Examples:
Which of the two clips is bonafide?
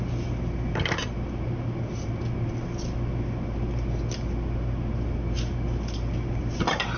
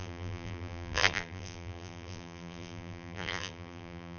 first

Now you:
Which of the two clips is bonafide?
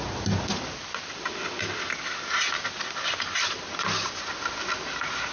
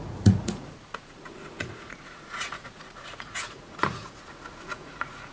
first